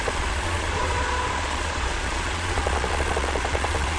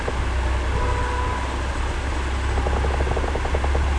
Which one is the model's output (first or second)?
first